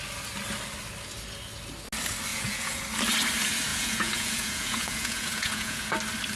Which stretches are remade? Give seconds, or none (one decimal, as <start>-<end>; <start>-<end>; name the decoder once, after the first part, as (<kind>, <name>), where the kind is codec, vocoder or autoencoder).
2.3-2.8 (vocoder, Vocos); 3.7-5.9